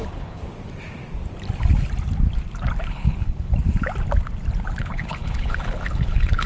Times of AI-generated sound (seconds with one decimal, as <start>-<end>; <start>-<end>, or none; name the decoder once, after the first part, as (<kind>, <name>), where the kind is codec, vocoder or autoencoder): 0.0-0.4 (codec, HILCodec); 2.8-3.5; 4.8-6.5